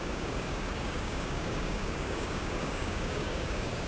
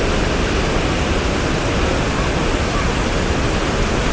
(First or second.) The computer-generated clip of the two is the first